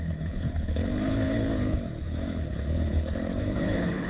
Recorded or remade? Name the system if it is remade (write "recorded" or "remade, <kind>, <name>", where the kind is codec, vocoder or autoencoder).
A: remade, codec, HILCodec